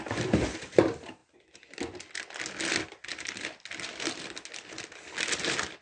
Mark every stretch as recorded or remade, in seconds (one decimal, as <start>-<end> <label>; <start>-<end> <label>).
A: 0.0-5.8 recorded